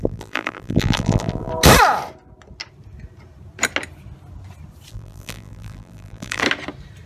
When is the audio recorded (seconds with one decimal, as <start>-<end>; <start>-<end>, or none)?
1.5-4.9; 6.4-7.1